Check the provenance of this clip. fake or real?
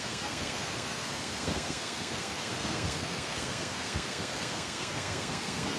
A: fake